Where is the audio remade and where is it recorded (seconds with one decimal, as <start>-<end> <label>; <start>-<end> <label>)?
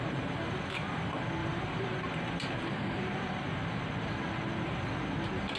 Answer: 0.0-1.4 recorded; 1.4-4.8 remade; 4.8-5.6 recorded